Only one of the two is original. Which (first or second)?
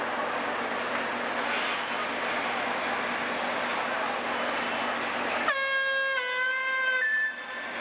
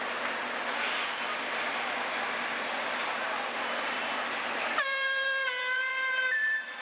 first